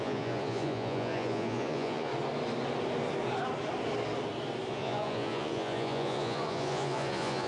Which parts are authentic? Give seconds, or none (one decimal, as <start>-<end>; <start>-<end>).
2.1-4.7